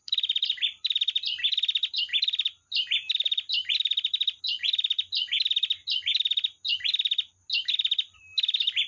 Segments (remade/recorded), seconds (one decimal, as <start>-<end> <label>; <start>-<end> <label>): 0.0-4.4 remade; 4.4-8.9 recorded